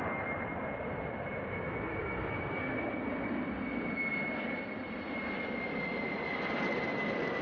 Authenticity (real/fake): real